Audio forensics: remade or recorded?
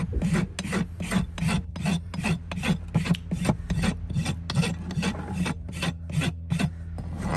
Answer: recorded